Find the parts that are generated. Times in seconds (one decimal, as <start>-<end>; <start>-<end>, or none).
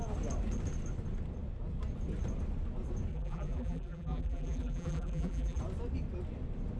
3.1-5.6